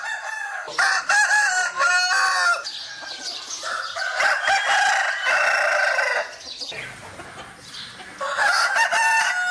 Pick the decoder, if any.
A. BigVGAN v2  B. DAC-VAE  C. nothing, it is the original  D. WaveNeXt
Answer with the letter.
C